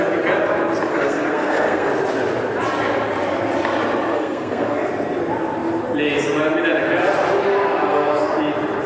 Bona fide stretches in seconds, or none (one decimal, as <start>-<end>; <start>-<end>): 0.0-0.9; 1.9-4.1; 4.9-7.8; 8.3-8.9